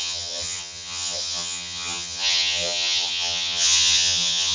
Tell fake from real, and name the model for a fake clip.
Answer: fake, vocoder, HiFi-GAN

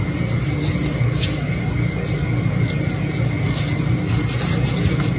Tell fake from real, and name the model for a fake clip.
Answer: real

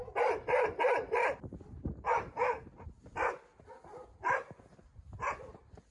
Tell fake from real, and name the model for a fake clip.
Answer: real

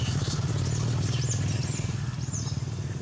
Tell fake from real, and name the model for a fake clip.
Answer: real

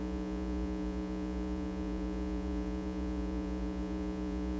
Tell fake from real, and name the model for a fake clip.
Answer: fake, vocoder, Vocos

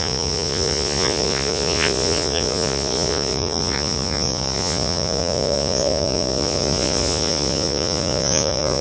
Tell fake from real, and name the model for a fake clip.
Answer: fake, vocoder, Vocos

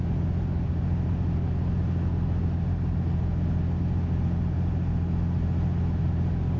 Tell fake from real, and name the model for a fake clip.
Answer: real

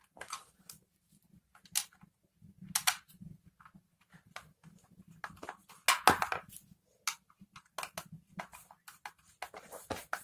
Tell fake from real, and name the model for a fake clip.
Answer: real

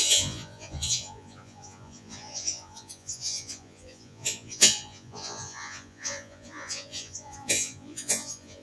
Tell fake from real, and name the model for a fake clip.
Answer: fake, vocoder, Vocos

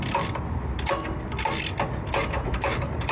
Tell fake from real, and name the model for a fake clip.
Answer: real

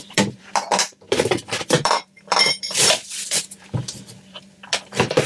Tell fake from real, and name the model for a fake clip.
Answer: fake, vocoder, BigVGAN v2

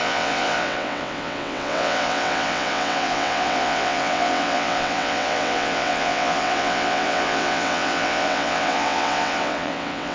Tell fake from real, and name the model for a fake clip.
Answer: fake, vocoder, WaveNeXt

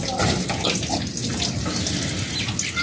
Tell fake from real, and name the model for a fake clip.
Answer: real